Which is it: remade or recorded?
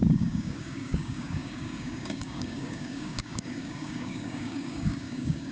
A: remade